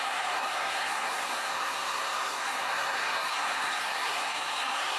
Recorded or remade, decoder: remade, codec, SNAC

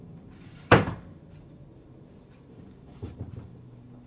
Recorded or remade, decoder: remade, vocoder, BigVGAN v2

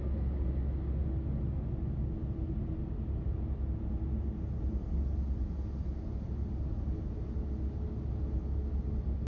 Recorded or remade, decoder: recorded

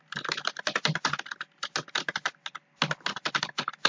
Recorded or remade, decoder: recorded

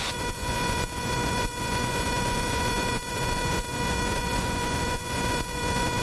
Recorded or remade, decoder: remade, vocoder, Vocos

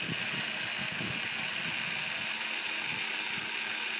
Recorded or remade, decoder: recorded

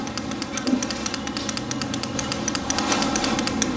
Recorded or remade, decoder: recorded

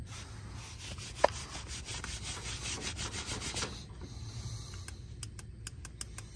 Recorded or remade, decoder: recorded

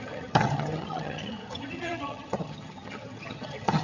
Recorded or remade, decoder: remade, vocoder, HiFi-GAN